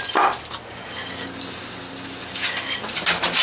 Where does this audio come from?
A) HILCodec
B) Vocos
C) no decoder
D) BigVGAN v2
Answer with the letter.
C